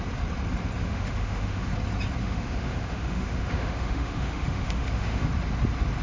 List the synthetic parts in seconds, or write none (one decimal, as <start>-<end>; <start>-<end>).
0.8-1.7; 2.2-5.3